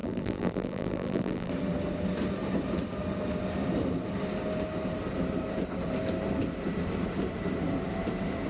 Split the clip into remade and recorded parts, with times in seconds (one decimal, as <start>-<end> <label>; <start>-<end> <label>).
0.0-1.5 remade; 1.5-8.5 recorded